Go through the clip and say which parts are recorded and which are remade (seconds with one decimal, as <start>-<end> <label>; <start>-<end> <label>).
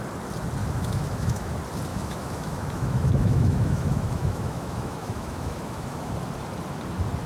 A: 0.0-0.6 recorded; 0.6-1.5 remade; 1.5-1.9 recorded; 1.9-6.1 remade; 6.1-7.3 recorded